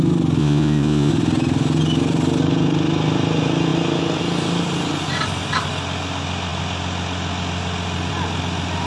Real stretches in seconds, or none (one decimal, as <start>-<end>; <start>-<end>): 0.0-0.4; 1.1-8.9